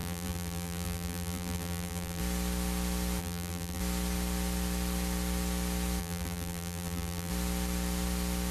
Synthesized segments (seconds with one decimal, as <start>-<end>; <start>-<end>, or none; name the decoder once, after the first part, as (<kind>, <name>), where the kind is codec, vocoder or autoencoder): 0.0-2.2 (vocoder, BigVGAN v2); 3.2-3.8; 6.0-7.3